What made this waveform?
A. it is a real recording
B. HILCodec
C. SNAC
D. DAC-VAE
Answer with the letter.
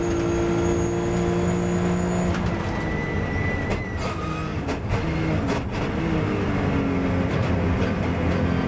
A